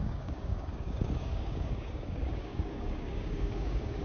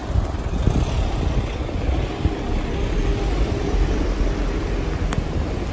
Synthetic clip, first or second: first